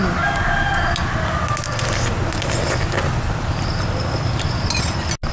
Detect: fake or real real